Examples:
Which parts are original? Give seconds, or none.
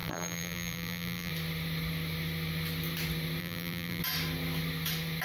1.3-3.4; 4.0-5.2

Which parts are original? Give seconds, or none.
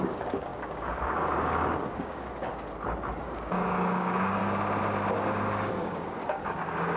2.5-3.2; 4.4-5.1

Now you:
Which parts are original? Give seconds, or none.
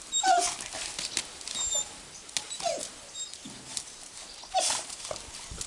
0.0-5.7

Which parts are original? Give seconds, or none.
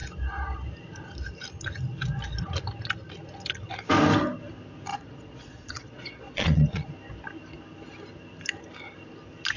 0.0-4.9; 6.9-9.6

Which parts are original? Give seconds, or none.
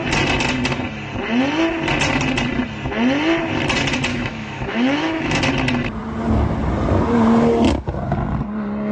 0.0-4.1; 5.4-8.9